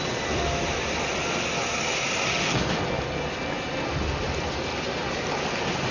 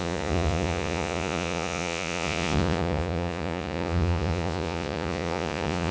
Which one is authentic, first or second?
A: first